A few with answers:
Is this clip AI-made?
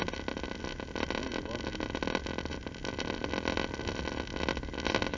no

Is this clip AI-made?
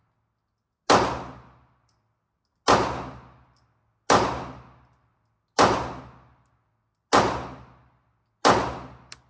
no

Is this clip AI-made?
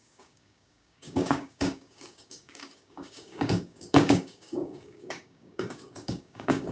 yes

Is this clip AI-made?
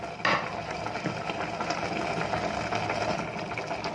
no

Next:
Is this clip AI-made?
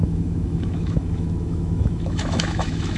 yes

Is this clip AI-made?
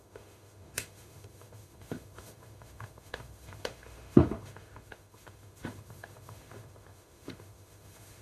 yes